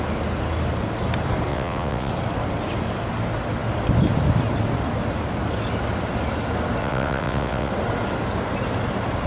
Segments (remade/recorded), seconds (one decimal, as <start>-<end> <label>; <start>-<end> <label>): 0.0-1.5 recorded; 1.5-2.1 remade; 2.1-6.8 recorded; 6.8-7.7 remade; 7.7-9.3 recorded